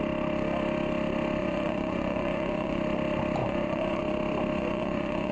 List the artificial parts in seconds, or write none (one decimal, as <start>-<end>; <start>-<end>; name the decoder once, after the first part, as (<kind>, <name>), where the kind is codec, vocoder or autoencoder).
1.4-2.8 (vocoder, Vocos); 3.4-4.0; 4.6-5.3